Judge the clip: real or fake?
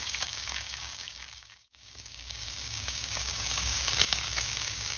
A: fake